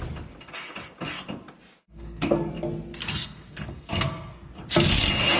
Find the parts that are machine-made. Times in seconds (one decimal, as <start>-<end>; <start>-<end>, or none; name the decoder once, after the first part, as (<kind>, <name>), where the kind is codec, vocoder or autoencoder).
1.8-2.5 (codec, SNAC); 3.0-4.5